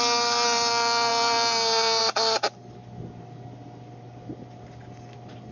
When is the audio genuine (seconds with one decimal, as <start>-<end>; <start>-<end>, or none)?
0.0-5.5